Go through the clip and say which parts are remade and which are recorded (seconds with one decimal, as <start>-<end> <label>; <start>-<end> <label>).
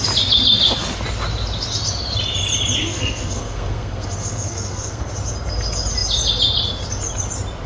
0.0-2.8 recorded; 2.8-5.1 remade; 5.1-7.7 recorded